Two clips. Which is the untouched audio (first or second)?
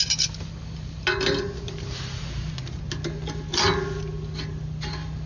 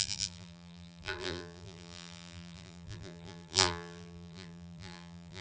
first